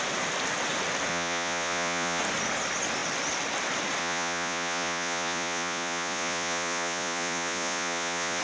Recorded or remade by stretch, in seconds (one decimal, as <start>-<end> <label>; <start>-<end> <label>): 0.0-1.1 recorded; 1.1-2.2 remade; 2.2-4.0 recorded; 4.0-8.4 remade